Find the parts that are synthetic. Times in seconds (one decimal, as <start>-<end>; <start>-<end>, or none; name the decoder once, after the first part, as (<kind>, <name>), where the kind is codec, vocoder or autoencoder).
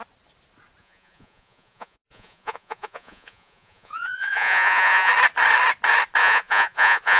0.8-5.1 (vocoder, Vocos); 6.2-7.2